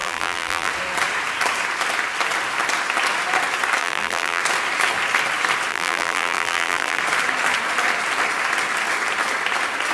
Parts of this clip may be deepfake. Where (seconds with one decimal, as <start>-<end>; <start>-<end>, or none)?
0.0-0.7; 3.8-4.4; 5.7-7.0